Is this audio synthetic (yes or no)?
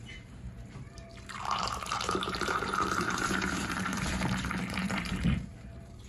yes